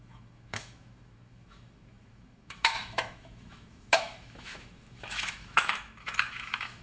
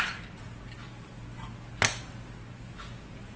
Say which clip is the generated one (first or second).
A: first